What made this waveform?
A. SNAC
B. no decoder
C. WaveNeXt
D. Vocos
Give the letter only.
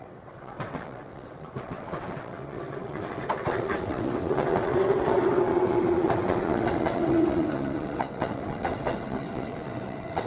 C